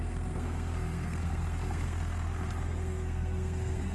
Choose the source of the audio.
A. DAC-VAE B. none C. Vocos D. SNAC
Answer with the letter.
D